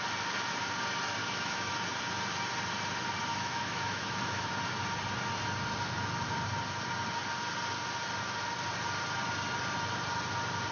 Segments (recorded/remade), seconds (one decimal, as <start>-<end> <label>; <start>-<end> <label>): 0.0-1.2 recorded; 1.2-1.7 remade; 1.7-3.3 recorded; 3.3-4.5 remade; 4.5-10.7 recorded